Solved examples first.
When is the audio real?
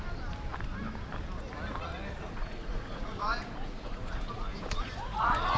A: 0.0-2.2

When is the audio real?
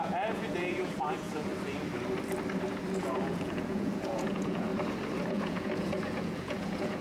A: 1.5-3.0; 4.7-5.3